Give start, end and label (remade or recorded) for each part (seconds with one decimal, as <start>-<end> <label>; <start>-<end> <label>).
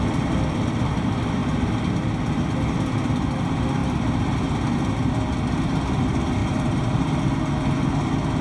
0.0-6.4 recorded; 6.4-7.2 remade; 7.2-8.4 recorded